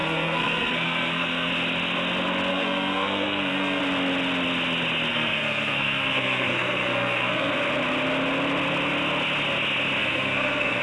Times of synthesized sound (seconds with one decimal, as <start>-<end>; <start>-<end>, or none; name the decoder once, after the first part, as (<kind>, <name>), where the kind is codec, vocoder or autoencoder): 0.0-1.5 (codec, SNAC); 2.5-3.8; 5.1-7.5; 10.0-10.8